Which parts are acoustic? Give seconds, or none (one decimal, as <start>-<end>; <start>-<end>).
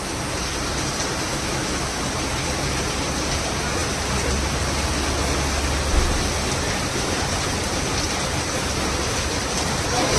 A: 0.0-1.3; 2.0-10.2